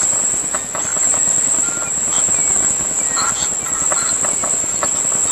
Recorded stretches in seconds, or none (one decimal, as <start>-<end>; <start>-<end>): 0.0-5.3